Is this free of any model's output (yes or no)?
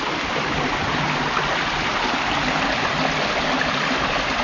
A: yes